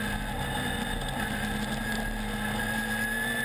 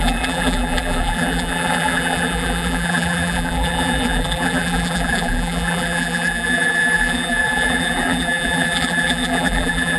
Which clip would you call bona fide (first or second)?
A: first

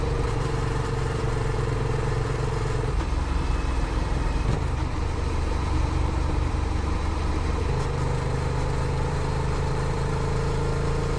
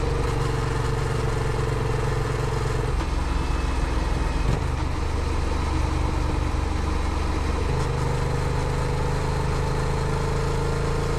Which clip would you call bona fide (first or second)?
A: second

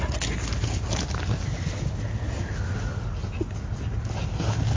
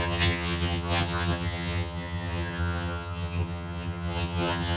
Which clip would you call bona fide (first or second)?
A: first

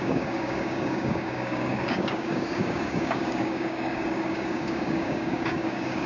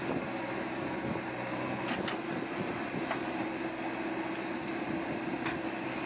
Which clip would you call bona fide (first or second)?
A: second